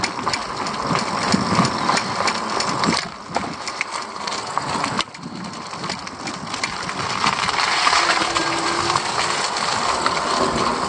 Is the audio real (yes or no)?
yes